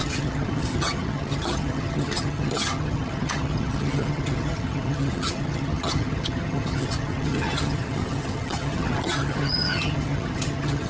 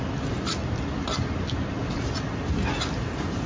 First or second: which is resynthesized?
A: first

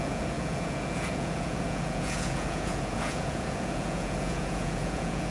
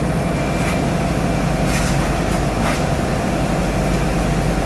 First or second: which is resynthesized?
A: first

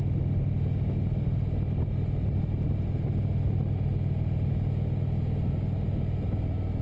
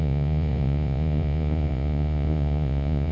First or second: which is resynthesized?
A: second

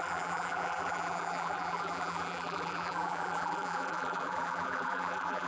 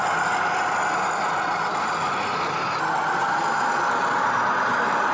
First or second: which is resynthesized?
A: first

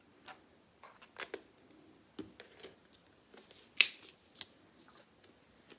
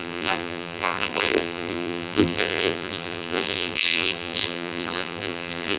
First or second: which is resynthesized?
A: second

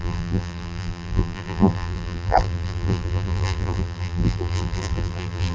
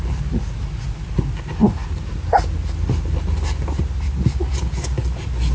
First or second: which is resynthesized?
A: first